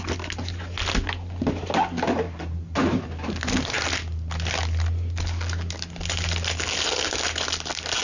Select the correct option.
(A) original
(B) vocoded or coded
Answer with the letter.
A